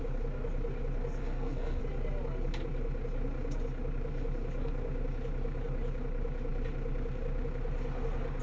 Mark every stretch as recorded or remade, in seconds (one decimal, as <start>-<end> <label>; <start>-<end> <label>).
0.0-1.2 recorded; 1.2-1.8 remade; 1.8-8.4 recorded